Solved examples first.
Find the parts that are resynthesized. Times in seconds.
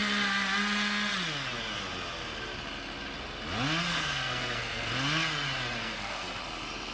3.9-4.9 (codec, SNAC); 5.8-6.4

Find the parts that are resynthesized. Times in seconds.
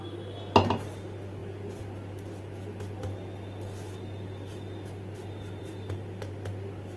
none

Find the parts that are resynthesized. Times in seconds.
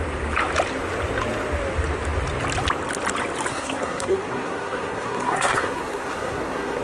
3.5-6.8 (codec, SNAC)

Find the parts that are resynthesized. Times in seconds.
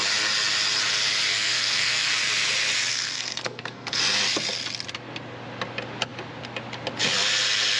1.3-2.2 (codec, SNAC); 2.9-4.0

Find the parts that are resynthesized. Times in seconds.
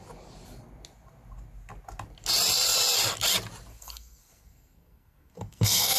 3.7-6.0 (codec, SNAC)